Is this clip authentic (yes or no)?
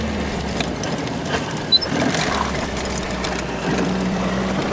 no